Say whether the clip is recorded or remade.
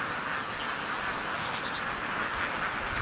recorded